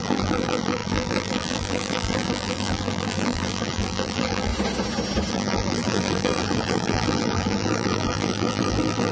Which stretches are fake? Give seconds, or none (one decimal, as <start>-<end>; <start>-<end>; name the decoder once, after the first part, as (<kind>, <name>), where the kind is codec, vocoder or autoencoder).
0.0-4.5 (vocoder, BigVGAN v2); 5.3-9.1